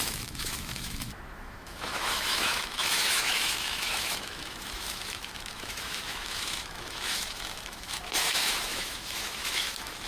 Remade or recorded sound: remade